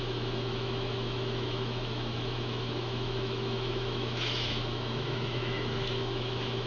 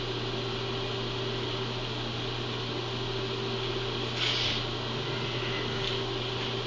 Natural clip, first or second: second